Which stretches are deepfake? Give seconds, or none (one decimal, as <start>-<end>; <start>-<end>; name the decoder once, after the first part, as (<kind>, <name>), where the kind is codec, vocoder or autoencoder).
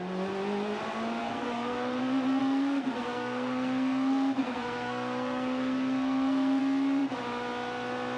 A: 1.2-2.0 (codec, SNAC); 2.4-6.6